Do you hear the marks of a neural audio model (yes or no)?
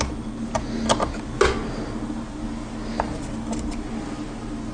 no